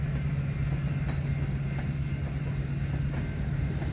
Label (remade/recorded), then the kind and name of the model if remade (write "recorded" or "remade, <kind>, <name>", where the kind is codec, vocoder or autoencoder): recorded